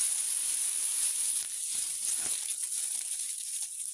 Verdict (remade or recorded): remade